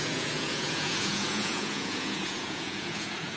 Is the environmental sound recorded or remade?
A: remade